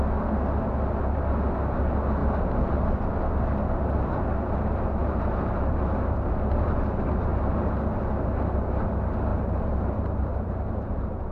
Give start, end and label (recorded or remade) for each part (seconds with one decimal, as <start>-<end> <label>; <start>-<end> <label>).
0.0-5.0 recorded; 5.0-5.7 remade; 5.7-9.3 recorded; 9.3-11.3 remade